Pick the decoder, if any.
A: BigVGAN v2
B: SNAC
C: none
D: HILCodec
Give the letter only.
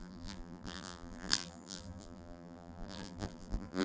A